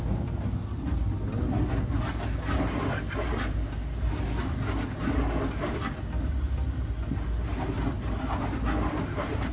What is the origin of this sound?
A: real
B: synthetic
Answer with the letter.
A